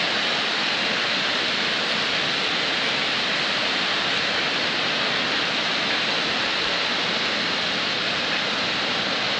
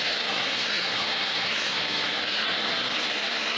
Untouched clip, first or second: first